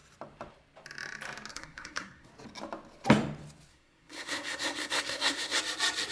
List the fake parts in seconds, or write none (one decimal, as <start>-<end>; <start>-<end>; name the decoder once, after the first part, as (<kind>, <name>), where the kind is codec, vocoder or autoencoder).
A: 1.5-2.3 (codec, SNAC); 3.7-5.6